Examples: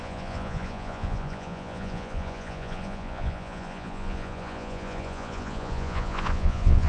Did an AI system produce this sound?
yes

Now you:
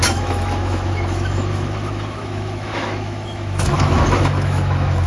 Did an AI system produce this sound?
yes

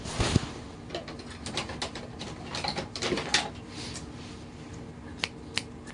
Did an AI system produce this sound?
no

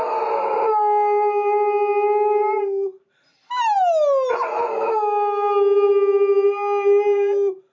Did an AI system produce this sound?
no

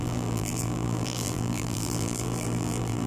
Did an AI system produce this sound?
yes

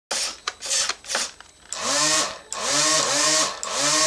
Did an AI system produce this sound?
no